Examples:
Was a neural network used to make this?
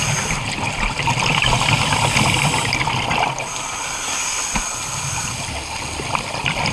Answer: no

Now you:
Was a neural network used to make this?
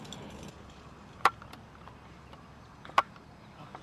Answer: no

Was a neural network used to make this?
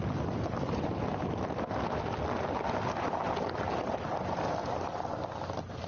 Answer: no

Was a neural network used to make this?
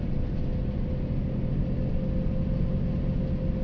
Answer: no